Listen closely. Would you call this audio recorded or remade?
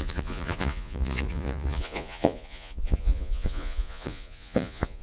remade